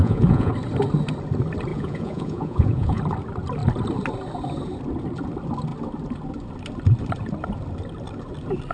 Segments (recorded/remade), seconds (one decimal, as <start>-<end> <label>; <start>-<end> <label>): 0.0-0.5 remade; 0.5-1.7 recorded; 1.7-3.0 remade; 3.0-8.7 recorded

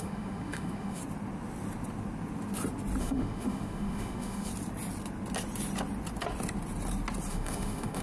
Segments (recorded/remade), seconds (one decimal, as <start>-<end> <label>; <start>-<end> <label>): 0.0-1.0 remade; 1.0-3.0 recorded; 3.0-4.5 remade; 4.5-7.3 recorded; 7.3-8.0 remade

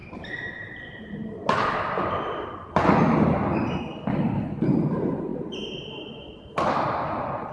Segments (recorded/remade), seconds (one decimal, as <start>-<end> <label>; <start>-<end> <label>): 0.0-1.1 remade; 1.1-5.3 recorded; 5.3-6.2 remade; 6.2-7.5 recorded